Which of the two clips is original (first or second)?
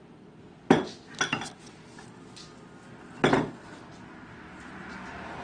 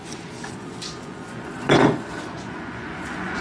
first